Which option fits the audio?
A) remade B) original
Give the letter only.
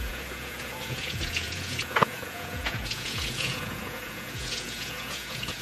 A